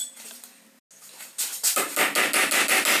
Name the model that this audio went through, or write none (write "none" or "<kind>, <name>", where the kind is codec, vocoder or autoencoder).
none